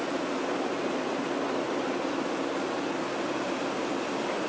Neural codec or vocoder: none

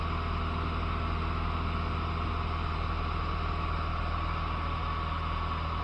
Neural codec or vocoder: none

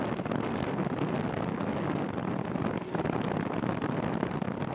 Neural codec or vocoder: none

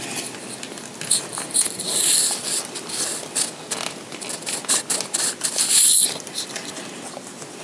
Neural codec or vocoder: none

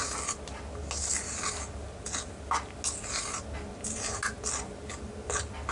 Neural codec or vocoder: none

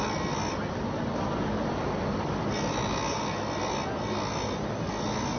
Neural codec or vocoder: none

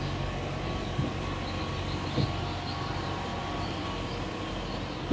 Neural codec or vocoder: none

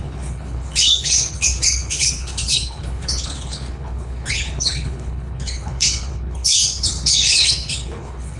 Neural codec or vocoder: codec, HILCodec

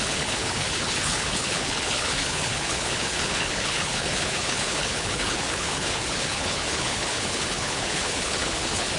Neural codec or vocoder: codec, HILCodec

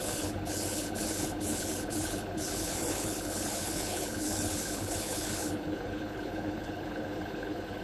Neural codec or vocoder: codec, HILCodec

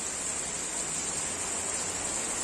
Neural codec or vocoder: none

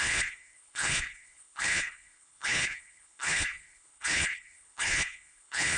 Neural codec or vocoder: codec, HILCodec